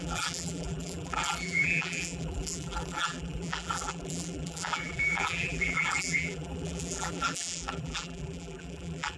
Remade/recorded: remade